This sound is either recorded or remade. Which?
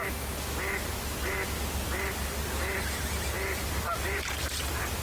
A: recorded